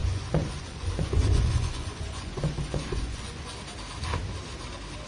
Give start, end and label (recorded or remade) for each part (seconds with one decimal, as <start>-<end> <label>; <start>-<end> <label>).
0.0-3.5 remade; 3.5-5.1 recorded